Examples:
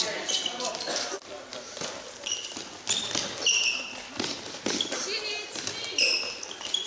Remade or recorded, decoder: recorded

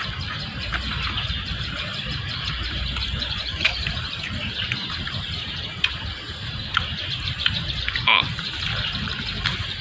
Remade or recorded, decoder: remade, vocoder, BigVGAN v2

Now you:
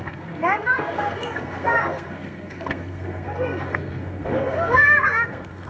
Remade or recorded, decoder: remade, codec, SNAC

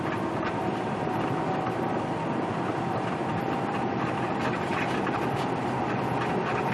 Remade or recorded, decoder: remade, vocoder, BigVGAN v2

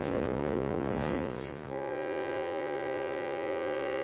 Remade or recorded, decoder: remade, vocoder, Vocos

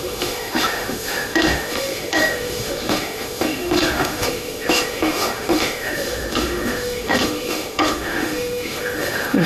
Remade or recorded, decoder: remade, autoencoder, DAC-VAE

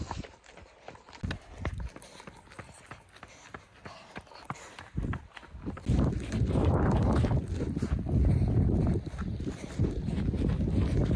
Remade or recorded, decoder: recorded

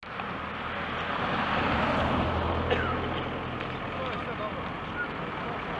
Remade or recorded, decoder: recorded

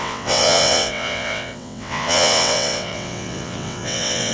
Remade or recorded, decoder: remade, vocoder, WaveNeXt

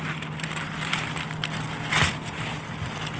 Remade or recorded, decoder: recorded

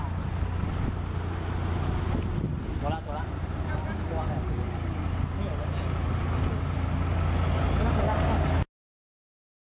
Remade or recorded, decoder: recorded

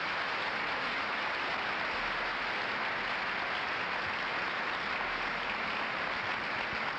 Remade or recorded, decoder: recorded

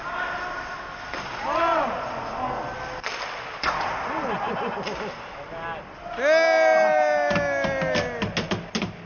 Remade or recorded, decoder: recorded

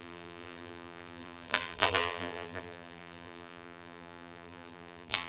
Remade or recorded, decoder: remade, vocoder, BigVGAN v2